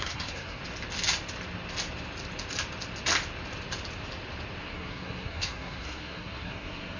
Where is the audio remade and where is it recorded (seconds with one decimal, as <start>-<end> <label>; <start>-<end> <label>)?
0.0-0.6 remade; 0.6-4.6 recorded; 4.6-7.0 remade